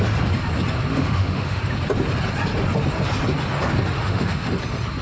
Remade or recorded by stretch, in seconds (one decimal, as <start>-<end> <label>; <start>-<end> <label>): 0.0-0.9 recorded; 0.9-1.6 remade; 1.6-4.0 recorded; 4.0-4.5 remade; 4.5-5.0 recorded

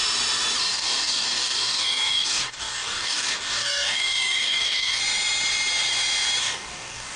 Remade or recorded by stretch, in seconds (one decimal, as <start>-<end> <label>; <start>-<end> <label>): 0.0-0.7 recorded; 0.7-5.0 remade; 5.0-6.4 recorded; 6.4-7.2 remade

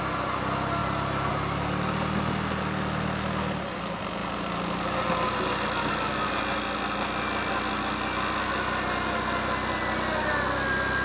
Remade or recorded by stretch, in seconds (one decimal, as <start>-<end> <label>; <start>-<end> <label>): 0.0-0.8 recorded; 0.8-1.3 remade; 1.3-4.2 recorded; 4.2-5.9 remade; 5.9-11.0 recorded

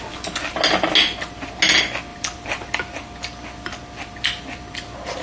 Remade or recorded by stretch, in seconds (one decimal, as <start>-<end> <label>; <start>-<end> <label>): 0.0-2.1 recorded; 2.1-2.7 remade; 2.7-5.2 recorded

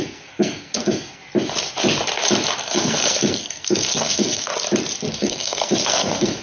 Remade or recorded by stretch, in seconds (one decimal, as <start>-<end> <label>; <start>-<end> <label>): 0.0-1.2 remade; 1.2-2.6 recorded; 2.6-4.5 remade; 4.5-5.1 recorded; 5.1-6.4 remade

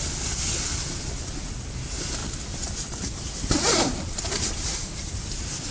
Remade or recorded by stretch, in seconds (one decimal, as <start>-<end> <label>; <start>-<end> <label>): 0.0-2.2 recorded; 2.2-5.7 remade

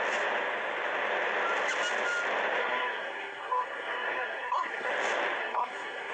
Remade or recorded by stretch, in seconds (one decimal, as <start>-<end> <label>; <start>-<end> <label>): 0.0-2.6 recorded; 2.6-4.9 remade; 4.9-5.4 recorded; 5.4-6.1 remade